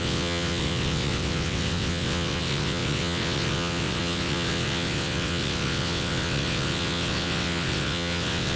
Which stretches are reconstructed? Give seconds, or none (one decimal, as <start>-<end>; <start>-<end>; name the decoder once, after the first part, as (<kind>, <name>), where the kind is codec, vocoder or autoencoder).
0.0-8.6 (vocoder, WaveNeXt)